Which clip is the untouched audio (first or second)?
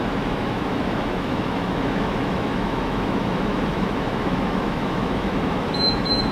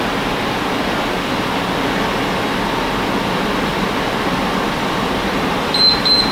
second